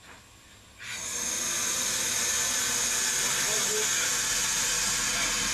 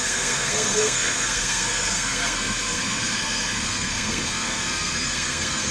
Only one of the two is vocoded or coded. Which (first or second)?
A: second